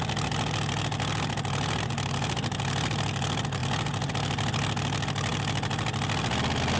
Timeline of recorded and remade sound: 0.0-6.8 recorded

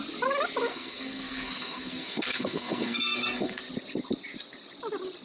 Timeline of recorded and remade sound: 0.0-0.7 recorded; 0.7-3.6 remade; 3.6-5.2 recorded

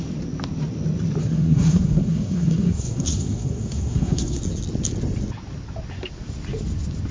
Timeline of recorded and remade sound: 0.0-1.2 recorded; 1.2-4.4 remade; 4.4-7.1 recorded

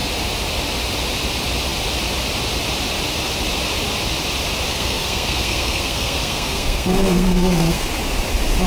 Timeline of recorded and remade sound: 0.0-4.7 recorded; 4.7-7.9 remade; 7.9-8.7 recorded

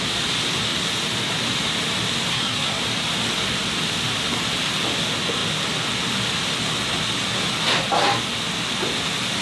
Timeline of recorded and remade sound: 0.0-2.3 recorded; 2.3-2.8 remade; 2.8-9.4 recorded

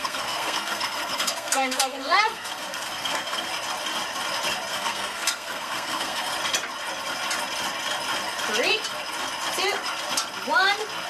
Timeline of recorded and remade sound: 0.0-3.5 remade; 3.5-4.7 recorded; 4.7-6.3 remade; 6.3-11.1 recorded

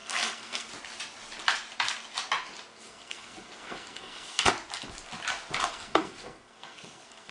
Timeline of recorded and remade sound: 0.0-0.7 remade; 0.7-2.7 recorded; 2.7-4.5 remade; 4.5-5.7 recorded; 5.7-7.3 remade

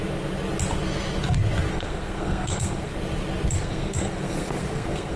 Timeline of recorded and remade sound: 0.0-1.7 recorded; 1.7-2.9 remade; 2.9-3.6 recorded; 3.6-5.2 remade